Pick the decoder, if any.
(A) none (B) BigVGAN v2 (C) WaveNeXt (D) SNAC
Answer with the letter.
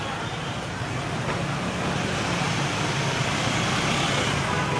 A